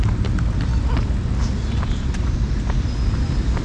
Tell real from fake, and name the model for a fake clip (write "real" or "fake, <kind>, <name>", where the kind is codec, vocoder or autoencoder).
real